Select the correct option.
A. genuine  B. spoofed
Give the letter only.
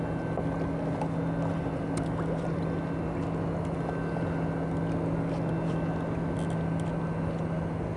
A